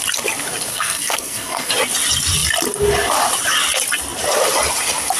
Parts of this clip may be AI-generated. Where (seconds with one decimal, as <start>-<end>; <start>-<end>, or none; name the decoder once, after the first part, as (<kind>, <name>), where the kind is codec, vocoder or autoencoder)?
0.7-1.7 (codec, SNAC)